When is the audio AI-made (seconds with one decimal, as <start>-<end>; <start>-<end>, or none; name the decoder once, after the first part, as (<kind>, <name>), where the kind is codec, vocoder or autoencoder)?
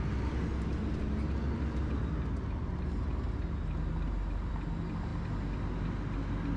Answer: none